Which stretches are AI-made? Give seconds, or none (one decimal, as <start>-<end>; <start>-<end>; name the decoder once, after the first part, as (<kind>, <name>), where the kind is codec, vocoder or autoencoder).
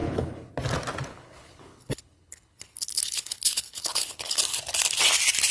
0.0-0.5 (codec, HILCodec); 1.1-4.4